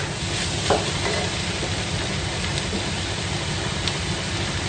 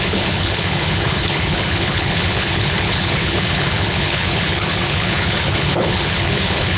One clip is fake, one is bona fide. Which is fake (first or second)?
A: second